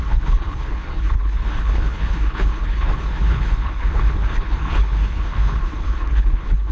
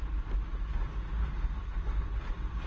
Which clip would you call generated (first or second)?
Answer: first